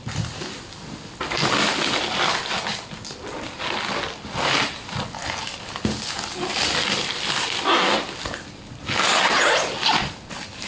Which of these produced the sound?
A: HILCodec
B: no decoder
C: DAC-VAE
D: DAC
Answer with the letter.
B